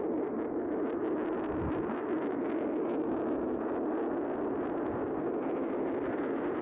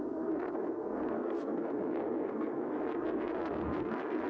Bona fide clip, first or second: first